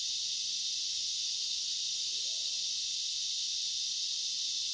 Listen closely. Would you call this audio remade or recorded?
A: recorded